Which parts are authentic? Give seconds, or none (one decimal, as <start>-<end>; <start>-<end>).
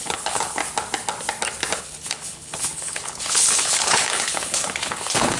0.6-1.8